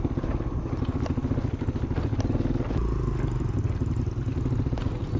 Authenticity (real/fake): real